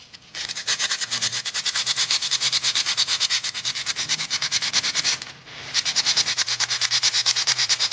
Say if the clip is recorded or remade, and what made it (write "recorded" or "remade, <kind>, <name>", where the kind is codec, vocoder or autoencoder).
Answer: recorded